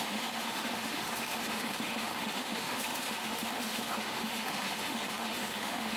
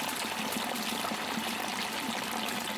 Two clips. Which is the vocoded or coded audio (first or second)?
first